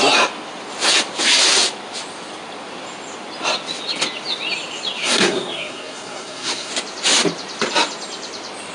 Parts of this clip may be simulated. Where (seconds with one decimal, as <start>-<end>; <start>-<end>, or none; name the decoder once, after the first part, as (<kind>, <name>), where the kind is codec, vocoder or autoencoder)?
5.0-6.7 (codec, SNAC)

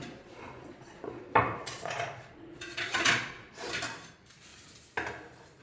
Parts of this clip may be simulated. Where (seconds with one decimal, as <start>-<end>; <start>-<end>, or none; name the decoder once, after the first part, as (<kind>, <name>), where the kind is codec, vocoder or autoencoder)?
0.0-1.2 (vocoder, Vocos); 1.6-3.7

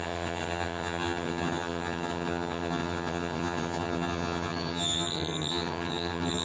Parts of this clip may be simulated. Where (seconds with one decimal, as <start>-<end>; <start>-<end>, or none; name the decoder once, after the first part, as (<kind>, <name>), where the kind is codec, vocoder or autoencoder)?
0.0-6.4 (vocoder, HiFi-GAN)

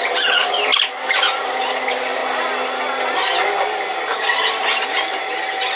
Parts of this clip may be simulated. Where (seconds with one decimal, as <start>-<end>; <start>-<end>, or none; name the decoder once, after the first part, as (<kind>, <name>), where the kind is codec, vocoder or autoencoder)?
none

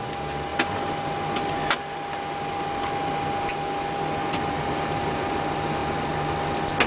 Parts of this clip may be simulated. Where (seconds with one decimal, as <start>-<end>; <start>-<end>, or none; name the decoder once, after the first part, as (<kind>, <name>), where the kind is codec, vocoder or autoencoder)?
none

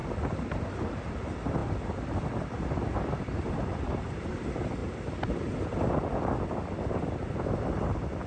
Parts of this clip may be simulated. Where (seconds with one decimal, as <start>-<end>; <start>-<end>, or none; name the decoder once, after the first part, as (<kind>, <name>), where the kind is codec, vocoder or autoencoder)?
none

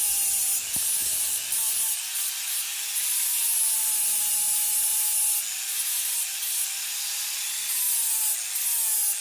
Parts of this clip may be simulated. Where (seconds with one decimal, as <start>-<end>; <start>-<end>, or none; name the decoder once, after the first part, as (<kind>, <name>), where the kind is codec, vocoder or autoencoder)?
none

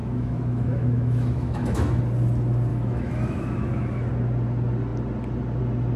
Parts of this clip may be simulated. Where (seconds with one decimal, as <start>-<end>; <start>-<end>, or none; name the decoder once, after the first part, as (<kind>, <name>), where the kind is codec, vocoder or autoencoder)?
0.0-2.0 (autoencoder, DAC-VAE); 2.7-4.1